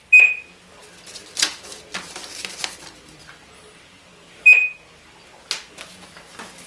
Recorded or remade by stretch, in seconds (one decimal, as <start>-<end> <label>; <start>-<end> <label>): 0.0-0.8 recorded; 0.8-3.6 remade; 3.6-6.7 recorded